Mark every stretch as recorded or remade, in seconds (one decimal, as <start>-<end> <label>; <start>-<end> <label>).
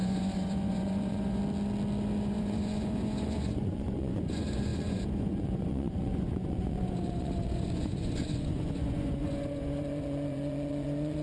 0.0-1.4 remade; 1.4-2.2 recorded; 2.2-11.2 remade